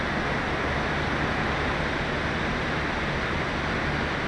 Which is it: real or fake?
real